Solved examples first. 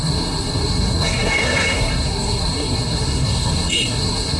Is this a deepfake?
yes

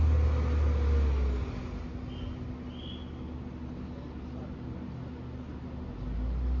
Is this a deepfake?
no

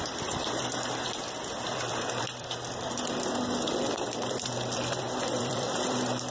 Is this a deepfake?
yes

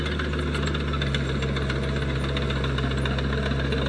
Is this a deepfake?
no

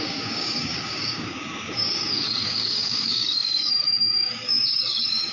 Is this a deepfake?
yes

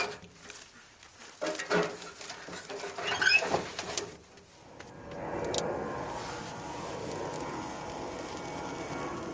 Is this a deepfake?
no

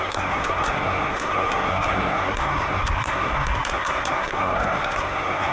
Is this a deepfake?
yes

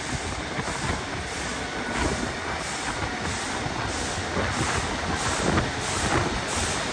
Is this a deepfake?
no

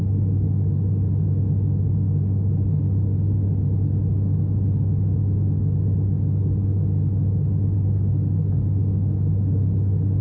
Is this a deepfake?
no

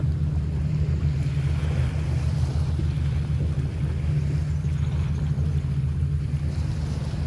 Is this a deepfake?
no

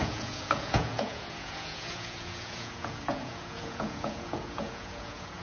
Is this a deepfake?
yes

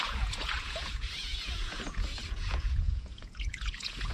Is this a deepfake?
yes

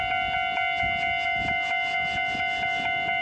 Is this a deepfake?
no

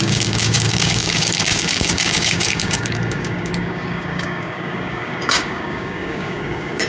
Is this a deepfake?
yes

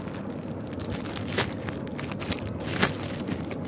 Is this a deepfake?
no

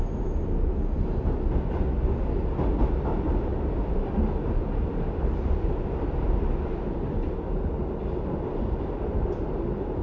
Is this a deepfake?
no